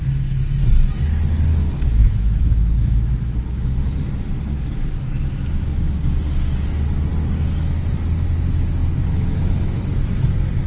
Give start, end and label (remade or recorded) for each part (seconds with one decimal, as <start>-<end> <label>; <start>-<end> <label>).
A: 0.0-2.0 recorded; 2.0-4.0 remade; 4.0-8.8 recorded; 8.8-10.1 remade; 10.1-10.7 recorded